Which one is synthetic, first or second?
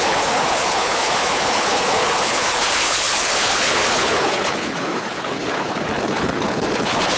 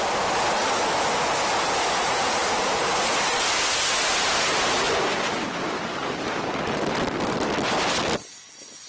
first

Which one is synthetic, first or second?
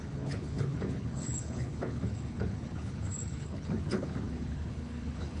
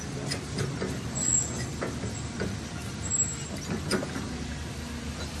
first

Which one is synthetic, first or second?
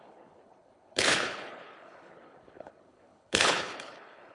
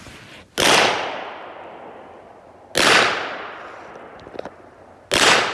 first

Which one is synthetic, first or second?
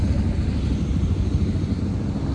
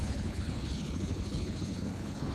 second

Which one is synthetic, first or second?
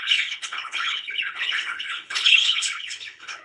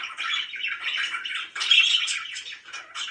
first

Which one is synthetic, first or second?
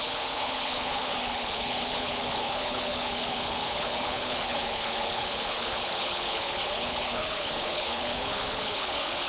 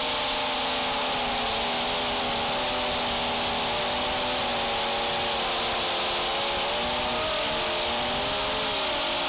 first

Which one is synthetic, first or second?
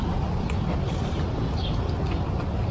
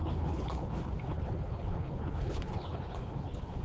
second